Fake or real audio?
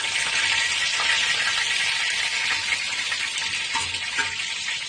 real